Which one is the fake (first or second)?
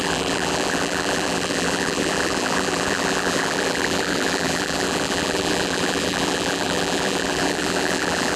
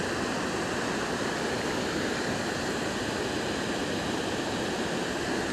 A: first